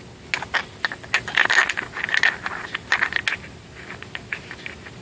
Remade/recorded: recorded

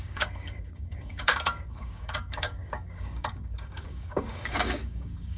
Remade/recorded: remade